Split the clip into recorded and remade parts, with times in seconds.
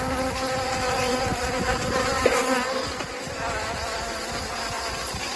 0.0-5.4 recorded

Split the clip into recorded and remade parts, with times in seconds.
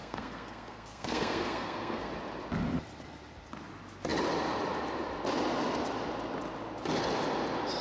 0.0-2.1 remade; 2.1-7.8 recorded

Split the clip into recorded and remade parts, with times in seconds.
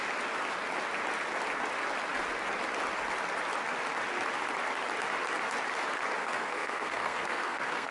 0.0-6.2 recorded; 6.2-7.9 remade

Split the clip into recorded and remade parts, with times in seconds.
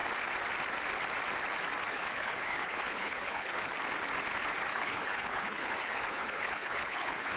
0.0-1.9 recorded; 1.9-3.7 remade; 3.7-4.7 recorded; 4.7-7.4 remade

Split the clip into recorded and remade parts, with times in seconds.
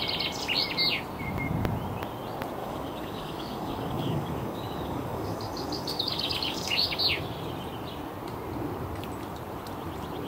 0.0-2.6 recorded; 2.6-7.0 remade; 7.0-10.3 recorded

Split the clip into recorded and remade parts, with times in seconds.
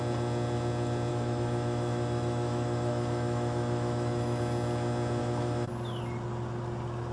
0.0-1.1 recorded; 1.1-4.4 remade; 4.4-5.2 recorded; 5.2-5.7 remade; 5.7-7.1 recorded